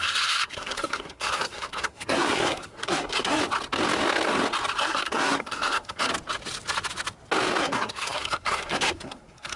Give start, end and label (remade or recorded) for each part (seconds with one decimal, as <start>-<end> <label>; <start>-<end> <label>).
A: 0.0-3.4 remade; 3.4-4.8 recorded; 4.8-6.1 remade; 6.1-7.6 recorded; 7.6-9.6 remade

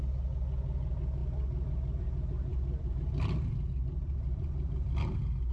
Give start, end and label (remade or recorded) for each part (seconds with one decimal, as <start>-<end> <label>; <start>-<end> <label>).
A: 0.0-2.5 recorded; 2.5-5.5 remade

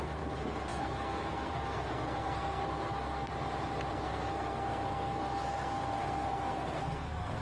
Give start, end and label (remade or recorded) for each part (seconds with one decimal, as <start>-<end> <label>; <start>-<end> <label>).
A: 0.0-3.3 remade; 3.3-3.9 recorded; 3.9-7.4 remade